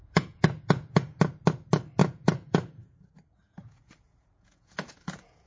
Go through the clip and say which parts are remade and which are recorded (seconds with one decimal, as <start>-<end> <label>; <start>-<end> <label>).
0.0-1.2 remade; 1.2-2.0 recorded; 2.0-5.5 remade